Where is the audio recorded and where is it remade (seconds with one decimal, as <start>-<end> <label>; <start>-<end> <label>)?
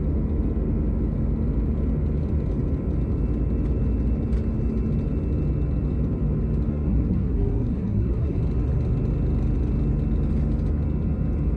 0.0-6.7 recorded; 6.7-8.4 remade; 8.4-11.6 recorded